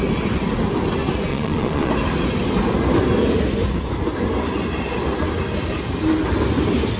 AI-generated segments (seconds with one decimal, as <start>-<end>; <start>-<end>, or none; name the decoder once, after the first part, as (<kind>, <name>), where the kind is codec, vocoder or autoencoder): 1.3-1.9 (vocoder, Vocos)